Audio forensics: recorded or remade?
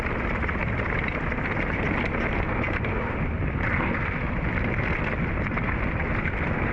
recorded